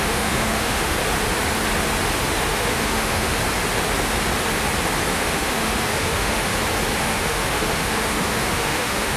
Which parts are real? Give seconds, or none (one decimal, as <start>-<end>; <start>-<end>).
1.0-2.5; 3.4-5.1; 6.5-7.0